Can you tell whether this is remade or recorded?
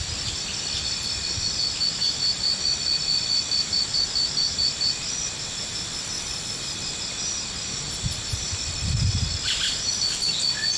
recorded